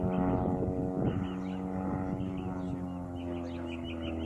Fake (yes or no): no